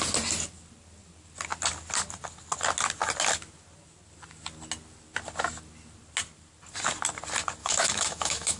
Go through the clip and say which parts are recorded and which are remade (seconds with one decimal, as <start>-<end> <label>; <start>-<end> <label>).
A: 0.0-7.6 recorded; 7.6-8.6 remade